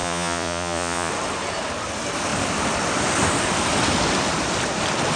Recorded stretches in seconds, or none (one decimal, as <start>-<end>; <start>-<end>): 1.1-5.2